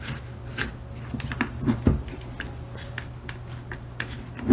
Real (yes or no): yes